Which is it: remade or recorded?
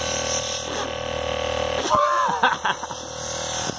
recorded